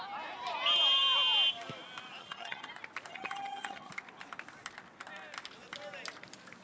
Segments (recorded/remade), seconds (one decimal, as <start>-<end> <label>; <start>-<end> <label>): 0.0-2.2 recorded; 2.2-2.7 remade; 2.7-3.1 recorded; 3.1-3.9 remade; 3.9-6.6 recorded